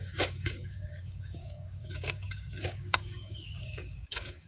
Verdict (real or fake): fake